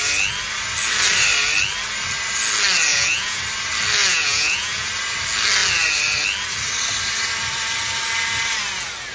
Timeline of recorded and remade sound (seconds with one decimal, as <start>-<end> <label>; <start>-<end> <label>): 0.0-2.9 recorded; 2.9-3.4 remade; 3.4-4.0 recorded; 4.0-4.9 remade; 4.9-9.1 recorded